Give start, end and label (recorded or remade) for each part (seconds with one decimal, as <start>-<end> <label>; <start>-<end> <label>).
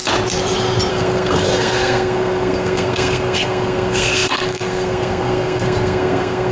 0.0-0.9 recorded; 0.9-6.5 remade